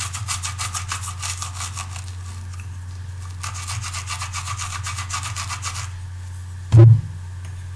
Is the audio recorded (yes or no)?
yes